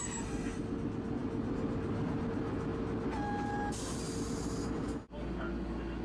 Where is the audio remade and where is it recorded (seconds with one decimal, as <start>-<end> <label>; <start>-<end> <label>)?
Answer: 0.0-6.0 recorded